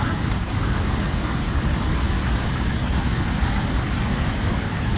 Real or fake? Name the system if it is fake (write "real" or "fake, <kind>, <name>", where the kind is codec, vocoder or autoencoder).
fake, codec, DAC